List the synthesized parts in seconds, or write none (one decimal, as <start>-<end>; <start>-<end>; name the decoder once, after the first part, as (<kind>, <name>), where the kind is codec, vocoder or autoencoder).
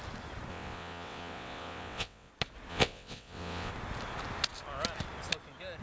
0.5-2.3 (vocoder, WaveNeXt); 2.7-3.7